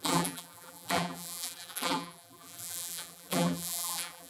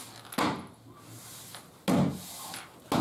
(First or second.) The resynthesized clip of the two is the first